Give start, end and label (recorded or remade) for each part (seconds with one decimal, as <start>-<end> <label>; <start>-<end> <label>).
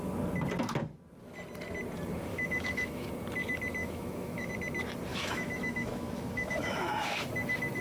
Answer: 0.0-2.3 recorded; 2.3-3.1 remade; 3.1-3.8 recorded; 3.8-4.5 remade; 4.5-5.1 recorded; 5.1-7.2 remade; 7.2-7.8 recorded